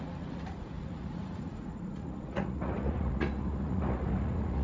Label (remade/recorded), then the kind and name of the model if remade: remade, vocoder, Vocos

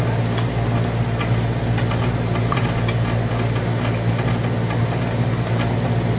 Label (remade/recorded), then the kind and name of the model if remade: recorded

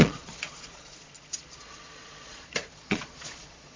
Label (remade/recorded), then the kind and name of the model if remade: remade, vocoder, Vocos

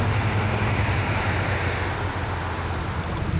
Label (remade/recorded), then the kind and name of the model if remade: recorded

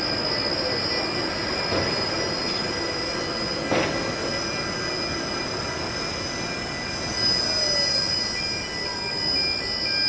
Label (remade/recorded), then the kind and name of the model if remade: recorded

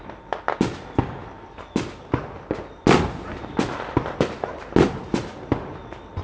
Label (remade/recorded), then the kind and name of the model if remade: recorded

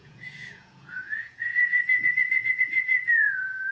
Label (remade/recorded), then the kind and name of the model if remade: remade, vocoder, Vocos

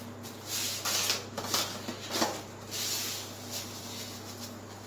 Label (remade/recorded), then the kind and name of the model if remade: recorded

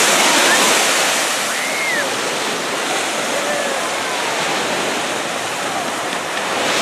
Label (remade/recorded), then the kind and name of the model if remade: recorded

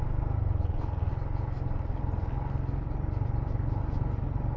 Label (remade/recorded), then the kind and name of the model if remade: recorded